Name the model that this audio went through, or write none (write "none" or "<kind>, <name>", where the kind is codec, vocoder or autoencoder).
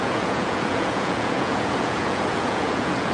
vocoder, Vocos